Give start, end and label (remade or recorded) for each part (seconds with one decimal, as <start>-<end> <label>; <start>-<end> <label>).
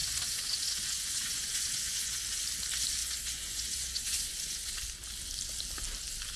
0.0-2.2 remade; 2.2-3.0 recorded; 3.0-4.8 remade; 4.8-6.4 recorded